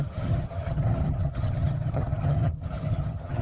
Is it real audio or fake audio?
fake